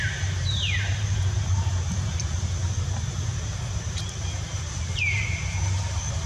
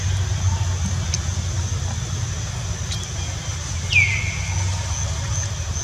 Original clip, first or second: second